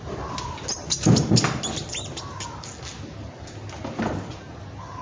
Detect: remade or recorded recorded